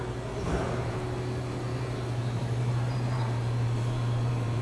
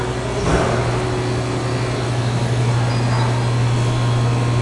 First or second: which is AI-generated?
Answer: first